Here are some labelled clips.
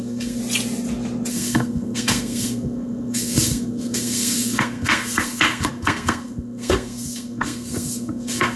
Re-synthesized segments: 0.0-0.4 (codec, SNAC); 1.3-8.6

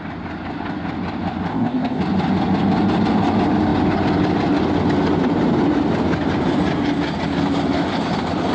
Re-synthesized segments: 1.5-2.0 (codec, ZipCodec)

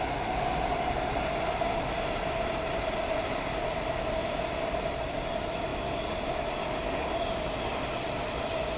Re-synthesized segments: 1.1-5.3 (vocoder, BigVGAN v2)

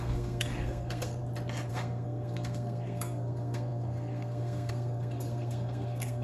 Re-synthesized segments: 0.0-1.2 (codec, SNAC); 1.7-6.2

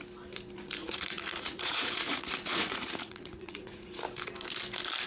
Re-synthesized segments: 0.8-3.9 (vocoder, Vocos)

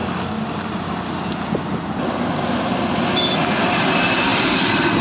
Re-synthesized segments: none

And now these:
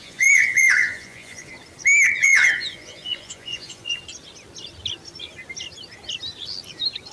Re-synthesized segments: 0.0-1.5 (vocoder, Vocos); 2.2-4.0

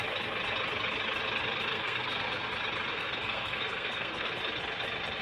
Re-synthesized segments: 1.7-2.5 (codec, SNAC); 2.9-4.3